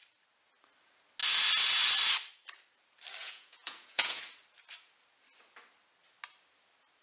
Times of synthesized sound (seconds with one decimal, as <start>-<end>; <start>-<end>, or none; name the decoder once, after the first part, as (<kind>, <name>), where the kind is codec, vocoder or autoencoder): 3.2-4.2 (vocoder, Vocos)